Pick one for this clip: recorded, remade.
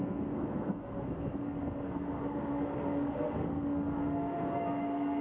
remade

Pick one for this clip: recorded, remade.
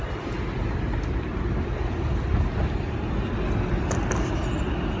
recorded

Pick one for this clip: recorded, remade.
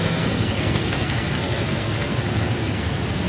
remade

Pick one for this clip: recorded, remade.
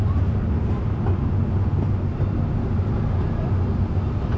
recorded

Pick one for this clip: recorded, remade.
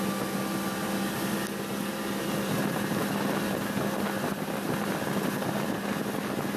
recorded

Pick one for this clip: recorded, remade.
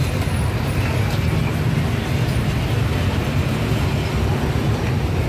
recorded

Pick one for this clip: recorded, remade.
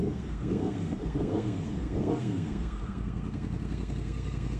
remade